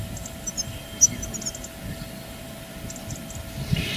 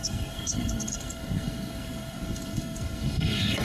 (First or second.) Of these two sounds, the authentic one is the first